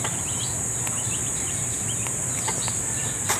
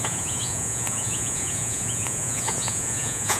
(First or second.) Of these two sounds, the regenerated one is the second